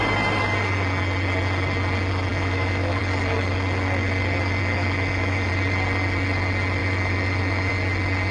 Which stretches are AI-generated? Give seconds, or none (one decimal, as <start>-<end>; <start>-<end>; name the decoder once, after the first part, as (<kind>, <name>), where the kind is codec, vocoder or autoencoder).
2.3-3.0 (autoencoder, DAC-VAE); 4.6-5.5; 6.8-7.7

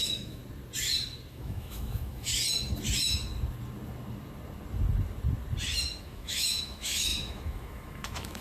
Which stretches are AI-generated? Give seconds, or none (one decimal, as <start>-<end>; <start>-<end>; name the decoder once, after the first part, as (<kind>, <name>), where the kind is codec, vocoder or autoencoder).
0.0-0.4 (autoencoder, DAC-VAE); 1.3-2.3; 6.0-8.4

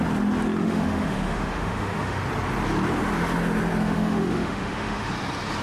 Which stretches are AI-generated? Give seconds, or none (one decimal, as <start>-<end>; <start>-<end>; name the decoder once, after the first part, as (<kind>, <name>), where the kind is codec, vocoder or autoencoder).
0.6-2.2 (autoencoder, DAC-VAE); 3.8-5.1

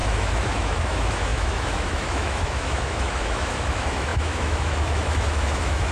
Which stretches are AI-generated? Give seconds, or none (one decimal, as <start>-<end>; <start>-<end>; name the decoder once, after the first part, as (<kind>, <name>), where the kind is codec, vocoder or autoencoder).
0.0-5.9 (autoencoder, DAC-VAE)

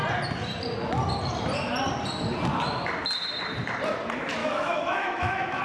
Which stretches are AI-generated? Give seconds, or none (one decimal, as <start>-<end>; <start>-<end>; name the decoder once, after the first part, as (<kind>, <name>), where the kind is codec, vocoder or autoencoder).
4.4-5.6 (autoencoder, DAC-VAE)